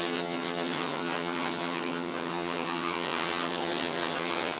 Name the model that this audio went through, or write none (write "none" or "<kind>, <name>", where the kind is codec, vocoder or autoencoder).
vocoder, HiFi-GAN